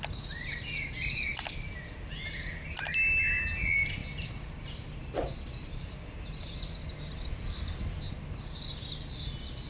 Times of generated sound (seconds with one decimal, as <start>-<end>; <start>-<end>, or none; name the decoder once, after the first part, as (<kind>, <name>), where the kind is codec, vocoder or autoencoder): 4.0-7.9 (vocoder, BigVGAN v2)